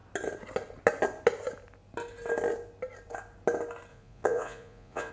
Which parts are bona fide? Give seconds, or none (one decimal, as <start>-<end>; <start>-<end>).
0.0-3.9